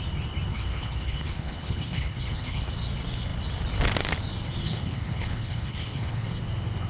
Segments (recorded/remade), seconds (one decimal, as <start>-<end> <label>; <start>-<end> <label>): 0.0-0.5 recorded; 0.5-2.7 remade; 2.7-4.6 recorded; 4.6-6.4 remade; 6.4-6.9 recorded

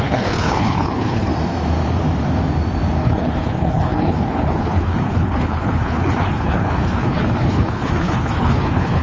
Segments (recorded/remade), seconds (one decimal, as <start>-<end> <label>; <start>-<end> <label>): 0.0-1.3 remade; 1.3-3.0 recorded; 3.0-9.0 remade

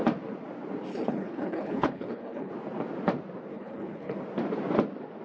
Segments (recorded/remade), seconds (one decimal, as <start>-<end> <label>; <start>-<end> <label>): 0.0-0.9 recorded; 0.9-2.5 remade; 2.5-3.5 recorded; 3.5-4.2 remade; 4.2-5.2 recorded